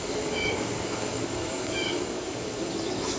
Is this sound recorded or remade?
remade